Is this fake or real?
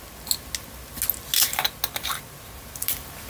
real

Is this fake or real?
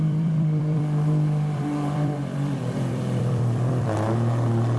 fake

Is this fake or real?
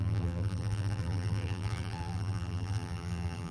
fake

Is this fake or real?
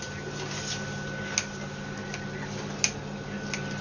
real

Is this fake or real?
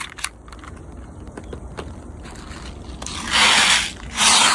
real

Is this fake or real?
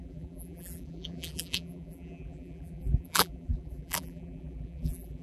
fake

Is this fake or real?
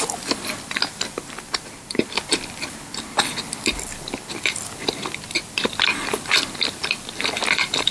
fake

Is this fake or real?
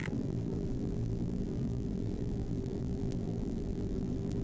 fake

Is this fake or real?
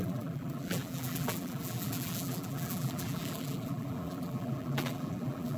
fake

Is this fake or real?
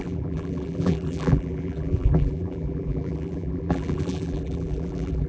fake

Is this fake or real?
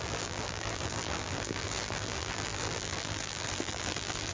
fake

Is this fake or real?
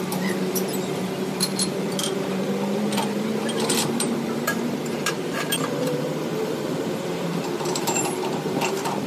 fake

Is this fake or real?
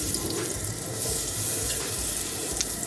fake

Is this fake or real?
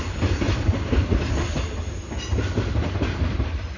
real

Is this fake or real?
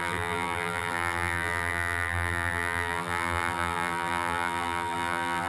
fake